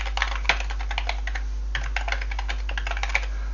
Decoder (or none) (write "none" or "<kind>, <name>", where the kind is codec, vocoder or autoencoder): none